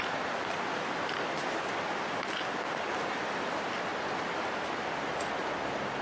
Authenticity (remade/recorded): recorded